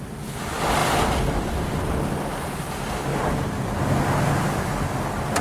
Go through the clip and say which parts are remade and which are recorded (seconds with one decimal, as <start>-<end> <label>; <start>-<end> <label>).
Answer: 0.0-5.4 recorded